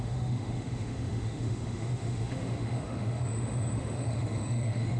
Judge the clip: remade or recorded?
remade